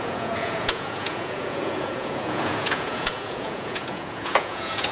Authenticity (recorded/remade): remade